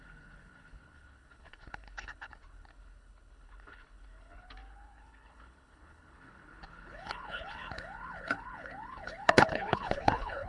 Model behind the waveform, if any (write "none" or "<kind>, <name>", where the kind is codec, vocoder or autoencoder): codec, HILCodec